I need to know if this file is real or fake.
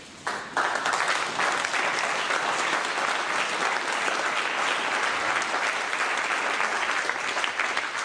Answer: real